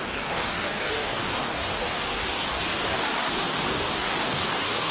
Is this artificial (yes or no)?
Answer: yes